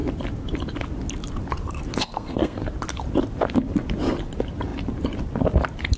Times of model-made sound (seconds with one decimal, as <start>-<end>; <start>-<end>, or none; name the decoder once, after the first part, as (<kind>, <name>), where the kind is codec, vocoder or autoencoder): 2.0-2.6 (codec, SNAC)